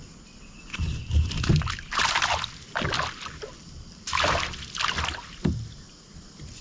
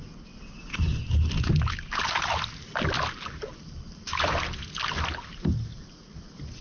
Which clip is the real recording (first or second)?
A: second